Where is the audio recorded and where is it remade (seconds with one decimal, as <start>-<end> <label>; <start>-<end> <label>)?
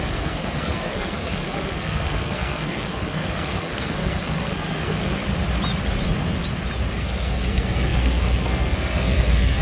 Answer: 0.0-5.2 remade; 5.2-6.9 recorded; 6.9-9.6 remade